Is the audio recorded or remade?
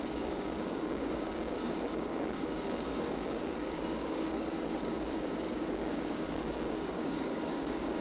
remade